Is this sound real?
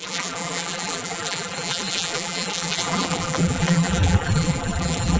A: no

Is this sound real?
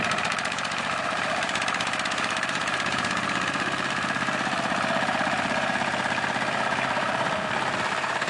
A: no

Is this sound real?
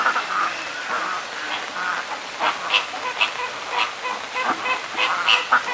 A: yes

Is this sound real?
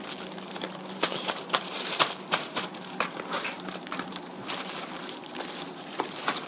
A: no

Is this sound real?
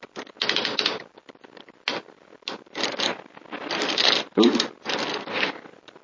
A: yes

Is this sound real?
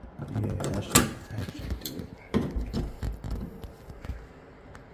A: yes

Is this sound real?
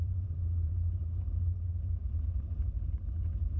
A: no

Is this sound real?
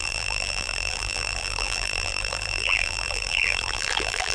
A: no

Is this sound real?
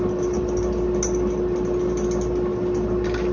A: yes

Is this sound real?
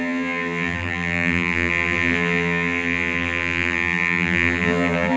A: no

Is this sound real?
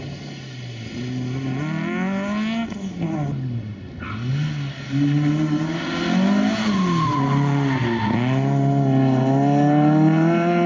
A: yes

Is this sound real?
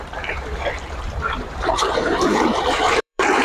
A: no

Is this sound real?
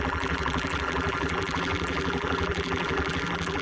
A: no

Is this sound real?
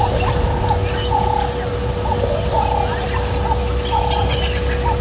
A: yes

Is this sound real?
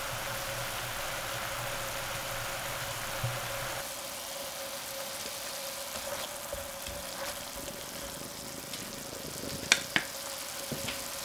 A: yes